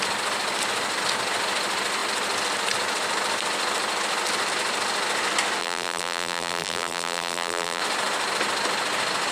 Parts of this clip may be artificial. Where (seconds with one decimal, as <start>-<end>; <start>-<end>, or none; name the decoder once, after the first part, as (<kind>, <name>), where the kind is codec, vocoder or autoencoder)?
5.6-7.8 (vocoder, BigVGAN v2)